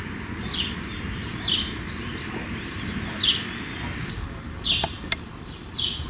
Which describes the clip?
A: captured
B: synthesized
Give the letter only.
A